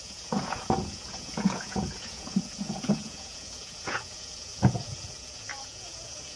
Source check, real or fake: fake